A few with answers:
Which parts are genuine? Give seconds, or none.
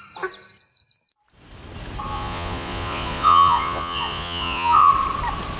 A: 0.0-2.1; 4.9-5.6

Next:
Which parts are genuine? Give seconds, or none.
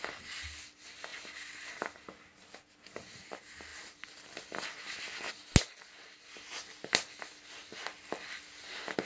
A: 0.0-9.1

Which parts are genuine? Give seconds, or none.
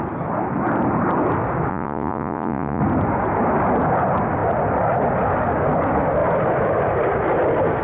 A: 0.0-1.7; 2.8-7.8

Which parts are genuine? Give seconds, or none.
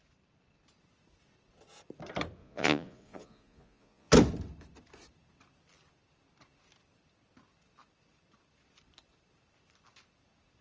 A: 0.0-2.4; 4.1-10.6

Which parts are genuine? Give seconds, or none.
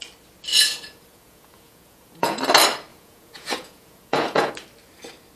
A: 0.0-0.5; 2.4-2.9; 4.5-5.4